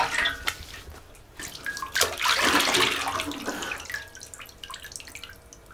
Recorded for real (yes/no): yes